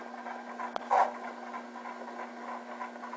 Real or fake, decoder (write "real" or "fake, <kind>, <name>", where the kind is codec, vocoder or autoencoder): real